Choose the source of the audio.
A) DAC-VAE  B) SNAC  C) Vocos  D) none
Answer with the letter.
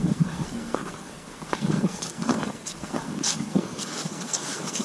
B